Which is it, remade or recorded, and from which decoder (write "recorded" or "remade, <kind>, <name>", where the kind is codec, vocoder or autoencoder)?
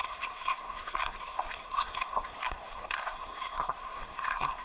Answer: remade, codec, SNAC